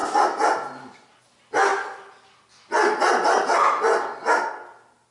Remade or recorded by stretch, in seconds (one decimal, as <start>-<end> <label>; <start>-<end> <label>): 0.0-5.1 recorded